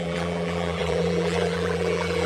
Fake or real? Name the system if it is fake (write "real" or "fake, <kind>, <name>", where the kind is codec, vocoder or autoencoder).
fake, vocoder, BigVGAN v2